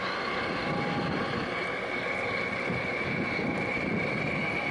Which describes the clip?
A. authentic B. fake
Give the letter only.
A